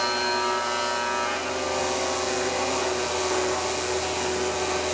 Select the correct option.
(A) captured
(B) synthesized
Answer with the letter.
A